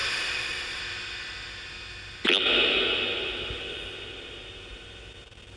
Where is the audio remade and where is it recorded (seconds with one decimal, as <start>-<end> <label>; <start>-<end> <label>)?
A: 0.0-0.8 remade; 0.8-5.6 recorded